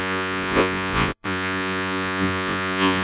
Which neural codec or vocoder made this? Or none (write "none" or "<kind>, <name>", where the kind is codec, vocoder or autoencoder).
vocoder, Vocos